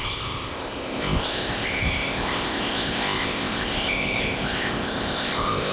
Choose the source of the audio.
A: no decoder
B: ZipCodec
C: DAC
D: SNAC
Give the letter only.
B